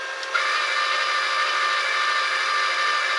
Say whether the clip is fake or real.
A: real